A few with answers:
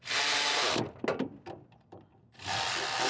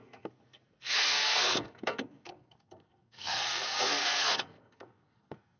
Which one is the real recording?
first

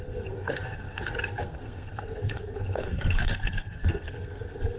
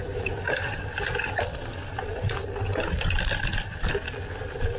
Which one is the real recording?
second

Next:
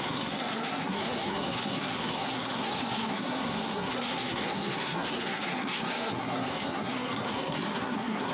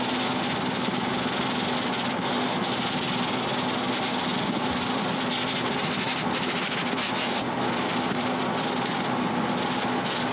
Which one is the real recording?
second